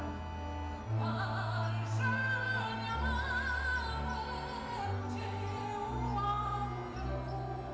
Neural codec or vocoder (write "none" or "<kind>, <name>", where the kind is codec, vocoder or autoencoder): none